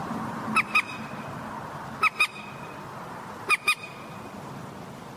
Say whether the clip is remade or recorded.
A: recorded